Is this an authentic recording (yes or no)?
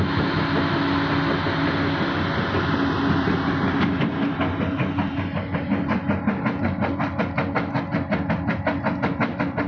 yes